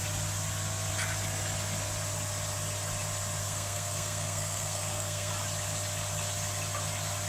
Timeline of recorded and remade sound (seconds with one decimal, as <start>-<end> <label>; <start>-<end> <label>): 0.0-3.4 recorded; 3.4-5.3 remade; 5.3-7.3 recorded

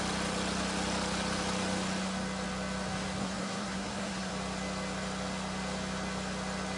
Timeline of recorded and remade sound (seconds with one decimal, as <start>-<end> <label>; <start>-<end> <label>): 0.0-3.2 recorded; 3.2-4.3 remade; 4.3-6.8 recorded

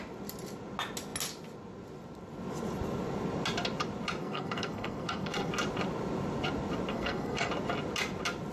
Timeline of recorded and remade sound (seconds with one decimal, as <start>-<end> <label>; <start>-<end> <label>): 0.0-4.2 recorded; 4.2-5.5 remade; 5.5-6.9 recorded; 6.9-7.5 remade; 7.5-8.5 recorded

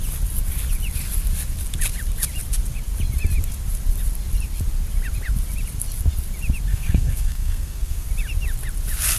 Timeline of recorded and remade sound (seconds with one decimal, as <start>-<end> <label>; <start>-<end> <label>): 0.0-6.7 recorded; 6.7-8.1 remade; 8.1-9.2 recorded

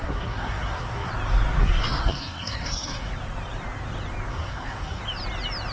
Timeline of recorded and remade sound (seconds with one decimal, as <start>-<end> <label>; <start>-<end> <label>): 0.0-1.1 remade; 1.1-1.6 recorded; 1.6-3.1 remade; 3.1-4.3 recorded; 4.3-5.0 remade; 5.0-5.7 recorded